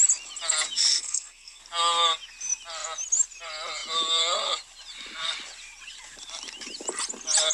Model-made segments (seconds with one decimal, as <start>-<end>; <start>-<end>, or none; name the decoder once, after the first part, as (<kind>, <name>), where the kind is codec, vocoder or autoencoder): 0.9-1.6 (codec, SNAC)